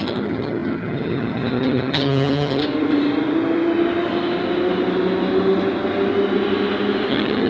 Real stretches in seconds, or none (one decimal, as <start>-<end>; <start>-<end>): 2.6-7.1

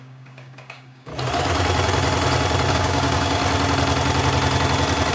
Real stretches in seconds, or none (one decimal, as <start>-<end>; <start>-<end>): 1.1-2.7; 3.4-5.1

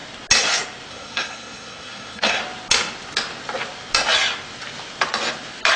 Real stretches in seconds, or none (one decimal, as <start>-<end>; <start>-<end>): 0.0-0.9; 2.4-5.8